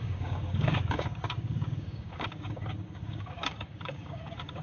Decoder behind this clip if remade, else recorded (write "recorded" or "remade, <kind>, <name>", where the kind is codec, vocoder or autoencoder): remade, codec, DAC